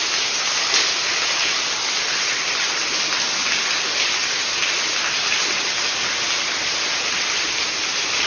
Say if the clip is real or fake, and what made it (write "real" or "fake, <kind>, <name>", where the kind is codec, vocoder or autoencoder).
real